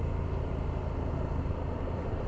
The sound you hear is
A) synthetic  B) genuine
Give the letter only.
B